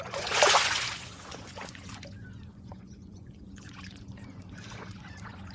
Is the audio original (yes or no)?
no